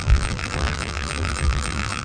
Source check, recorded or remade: remade